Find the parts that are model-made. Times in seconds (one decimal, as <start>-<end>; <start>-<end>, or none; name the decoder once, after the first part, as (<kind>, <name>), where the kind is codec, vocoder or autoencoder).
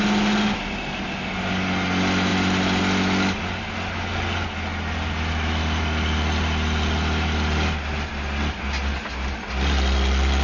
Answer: none